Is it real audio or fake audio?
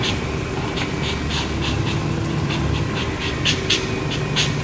real